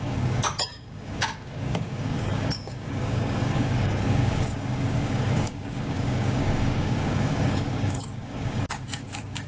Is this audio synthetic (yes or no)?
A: yes